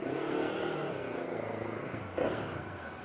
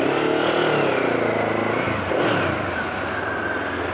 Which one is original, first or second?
second